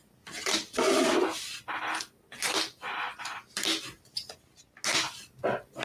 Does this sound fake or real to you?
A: real